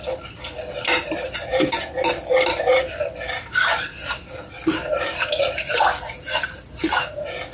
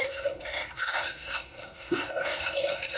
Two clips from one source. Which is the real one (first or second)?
first